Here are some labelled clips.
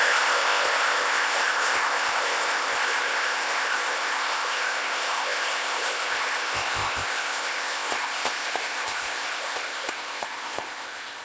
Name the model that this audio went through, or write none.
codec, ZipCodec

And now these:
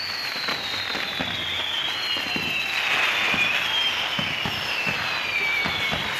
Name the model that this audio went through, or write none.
none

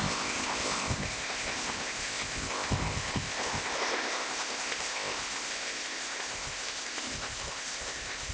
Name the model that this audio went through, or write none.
codec, ZipCodec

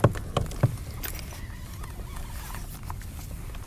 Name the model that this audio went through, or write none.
none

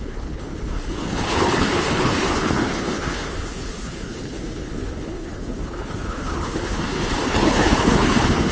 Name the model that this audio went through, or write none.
codec, HILCodec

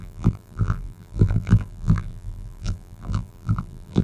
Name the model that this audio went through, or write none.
vocoder, BigVGAN v2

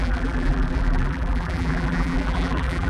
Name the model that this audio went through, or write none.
vocoder, BigVGAN v2